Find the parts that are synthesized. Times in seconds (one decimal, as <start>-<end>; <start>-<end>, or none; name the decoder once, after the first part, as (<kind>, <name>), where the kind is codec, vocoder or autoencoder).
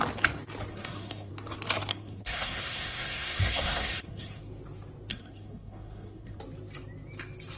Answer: 0.7-1.3 (codec, SNAC); 1.9-4.4; 5.1-6.4